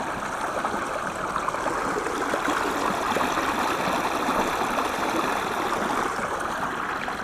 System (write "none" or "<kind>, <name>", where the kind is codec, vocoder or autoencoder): none